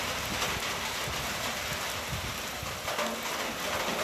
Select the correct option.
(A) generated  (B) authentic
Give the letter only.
B